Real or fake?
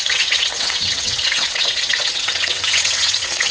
fake